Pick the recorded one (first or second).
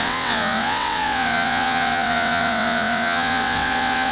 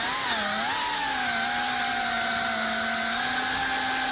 second